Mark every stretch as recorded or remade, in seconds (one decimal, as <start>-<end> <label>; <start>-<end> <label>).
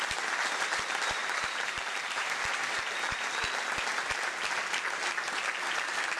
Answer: 0.0-1.2 recorded; 1.2-3.3 remade; 3.3-6.2 recorded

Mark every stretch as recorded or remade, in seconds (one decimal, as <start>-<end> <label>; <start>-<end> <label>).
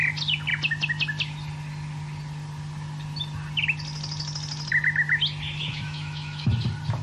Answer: 0.0-5.6 recorded; 5.6-6.5 remade; 6.5-7.0 recorded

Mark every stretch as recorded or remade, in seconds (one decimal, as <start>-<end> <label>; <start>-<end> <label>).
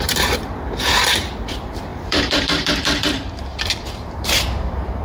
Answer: 0.0-5.0 remade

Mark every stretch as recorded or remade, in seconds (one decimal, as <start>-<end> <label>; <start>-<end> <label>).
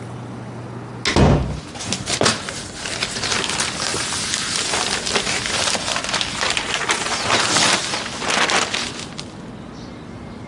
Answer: 0.0-10.5 recorded